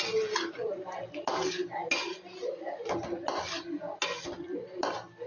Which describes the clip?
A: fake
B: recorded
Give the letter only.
B